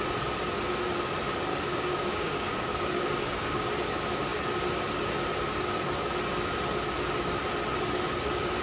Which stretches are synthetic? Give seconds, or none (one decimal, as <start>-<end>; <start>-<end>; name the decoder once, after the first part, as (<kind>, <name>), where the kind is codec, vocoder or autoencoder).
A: 1.5-3.6 (codec, DAC)